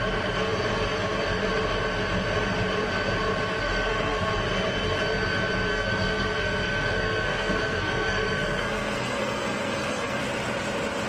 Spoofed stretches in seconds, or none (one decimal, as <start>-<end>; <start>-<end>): 3.5-4.3; 5.7-10.2